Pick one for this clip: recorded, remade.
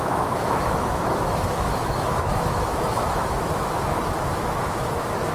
remade